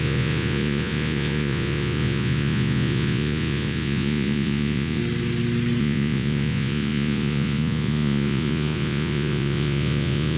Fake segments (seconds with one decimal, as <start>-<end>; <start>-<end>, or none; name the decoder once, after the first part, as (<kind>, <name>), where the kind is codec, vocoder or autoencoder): 0.0-5.0 (vocoder, Vocos); 5.8-10.4